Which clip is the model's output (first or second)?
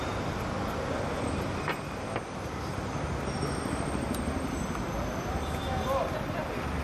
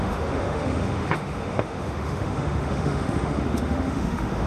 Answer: second